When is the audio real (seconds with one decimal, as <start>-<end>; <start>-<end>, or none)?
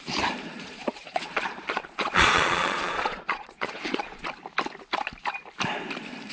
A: 0.0-0.5; 4.2-6.3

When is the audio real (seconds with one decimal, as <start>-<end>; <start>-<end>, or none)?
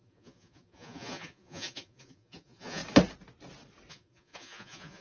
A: 2.8-3.9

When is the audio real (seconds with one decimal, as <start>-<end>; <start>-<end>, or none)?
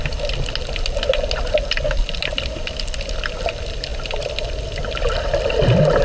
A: 0.0-6.0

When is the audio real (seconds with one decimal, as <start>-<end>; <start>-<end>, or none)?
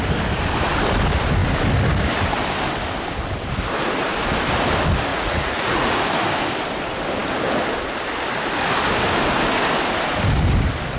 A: 0.0-5.1; 6.0-11.0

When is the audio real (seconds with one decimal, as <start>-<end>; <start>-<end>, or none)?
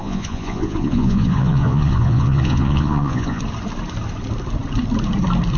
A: 3.4-5.6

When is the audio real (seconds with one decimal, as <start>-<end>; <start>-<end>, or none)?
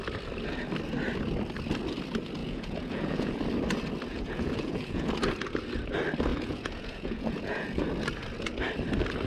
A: 0.0-2.4; 3.4-4.1; 5.1-6.3; 7.8-9.3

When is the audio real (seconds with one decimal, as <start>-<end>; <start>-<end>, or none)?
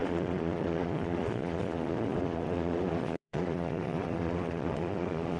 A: none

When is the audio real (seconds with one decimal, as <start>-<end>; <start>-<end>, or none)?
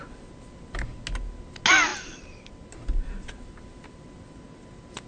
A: 0.0-5.1